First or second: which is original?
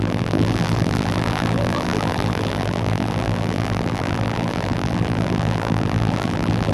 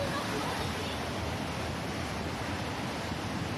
second